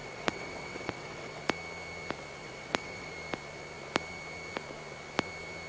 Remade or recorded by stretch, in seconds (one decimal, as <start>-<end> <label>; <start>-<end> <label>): 0.0-1.4 remade; 1.4-2.4 recorded; 2.4-3.1 remade; 3.1-5.7 recorded